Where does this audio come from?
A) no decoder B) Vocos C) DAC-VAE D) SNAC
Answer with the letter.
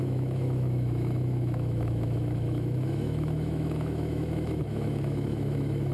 C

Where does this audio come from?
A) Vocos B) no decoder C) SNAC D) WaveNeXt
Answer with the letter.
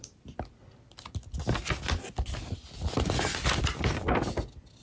B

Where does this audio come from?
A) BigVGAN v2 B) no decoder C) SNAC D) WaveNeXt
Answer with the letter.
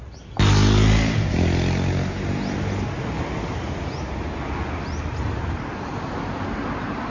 B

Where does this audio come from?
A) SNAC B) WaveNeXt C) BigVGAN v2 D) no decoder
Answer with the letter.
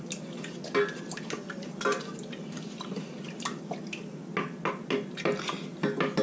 D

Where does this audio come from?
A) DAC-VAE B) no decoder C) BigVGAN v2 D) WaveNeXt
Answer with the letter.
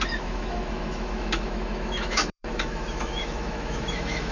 A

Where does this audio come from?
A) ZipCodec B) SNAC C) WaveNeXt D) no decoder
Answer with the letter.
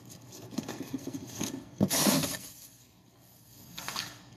B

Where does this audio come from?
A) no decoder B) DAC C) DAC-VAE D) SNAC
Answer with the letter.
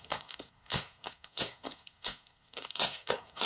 D